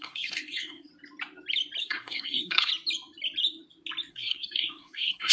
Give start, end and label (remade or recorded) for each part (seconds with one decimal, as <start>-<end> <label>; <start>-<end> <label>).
0.0-0.9 remade; 0.9-1.8 recorded; 1.8-2.7 remade; 2.7-4.1 recorded; 4.1-5.3 remade